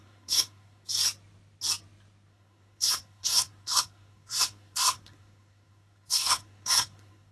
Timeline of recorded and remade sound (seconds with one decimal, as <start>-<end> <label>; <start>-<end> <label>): 0.0-0.9 remade; 0.9-2.3 recorded; 2.3-7.3 remade